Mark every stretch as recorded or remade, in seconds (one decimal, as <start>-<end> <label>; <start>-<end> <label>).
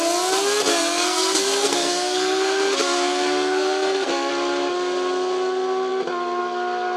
0.0-0.7 recorded; 0.7-4.3 remade; 4.3-7.0 recorded